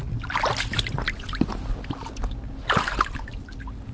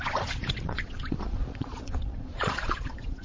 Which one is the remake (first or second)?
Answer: second